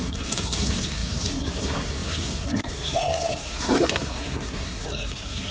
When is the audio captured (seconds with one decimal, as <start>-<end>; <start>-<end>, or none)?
none